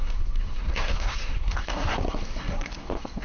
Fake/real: fake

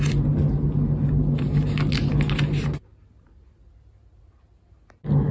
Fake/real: real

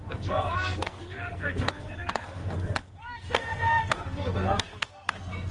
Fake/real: fake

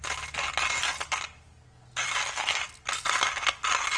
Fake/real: real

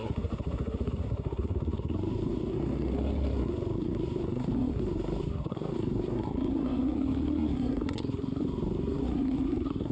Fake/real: fake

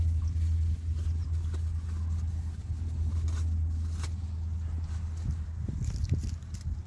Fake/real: real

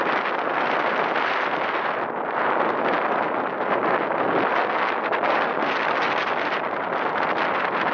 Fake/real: real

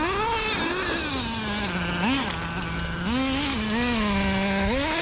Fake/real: real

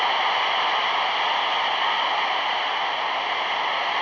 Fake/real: real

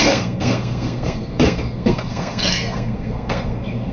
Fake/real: fake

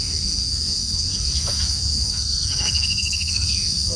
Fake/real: fake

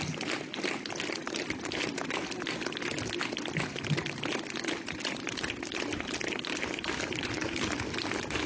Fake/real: real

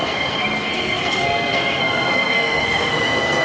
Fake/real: fake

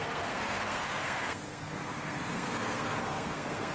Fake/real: fake